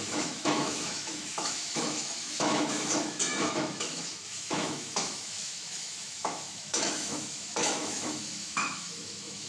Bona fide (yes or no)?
no